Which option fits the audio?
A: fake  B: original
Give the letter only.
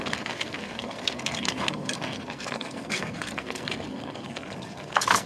A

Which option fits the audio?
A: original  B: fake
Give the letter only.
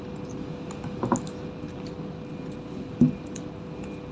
A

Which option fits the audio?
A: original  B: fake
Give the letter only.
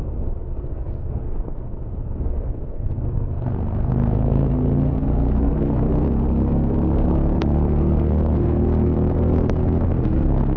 B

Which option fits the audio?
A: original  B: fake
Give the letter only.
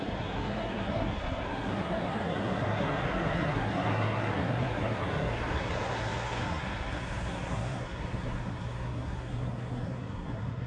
B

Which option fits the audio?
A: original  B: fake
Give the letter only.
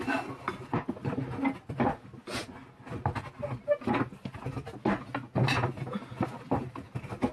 A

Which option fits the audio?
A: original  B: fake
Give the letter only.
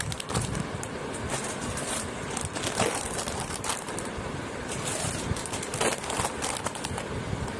A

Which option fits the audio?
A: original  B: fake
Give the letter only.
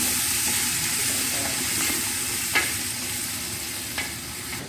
A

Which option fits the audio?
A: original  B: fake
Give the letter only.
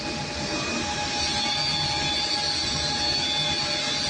A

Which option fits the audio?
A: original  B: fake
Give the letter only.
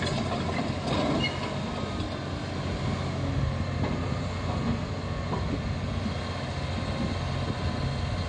A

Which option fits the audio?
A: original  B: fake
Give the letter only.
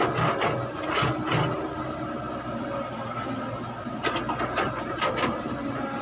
A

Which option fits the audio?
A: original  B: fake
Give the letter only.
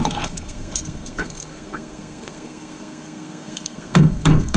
B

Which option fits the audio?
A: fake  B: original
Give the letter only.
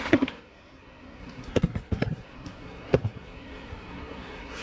A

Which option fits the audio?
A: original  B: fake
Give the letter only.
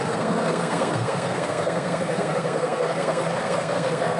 B